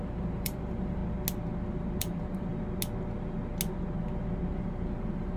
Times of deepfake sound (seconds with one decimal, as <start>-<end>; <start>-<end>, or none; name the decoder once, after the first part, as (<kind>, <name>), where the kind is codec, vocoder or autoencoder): 0.0-1.0 (vocoder, BigVGAN v2); 2.0-2.5; 4.5-5.4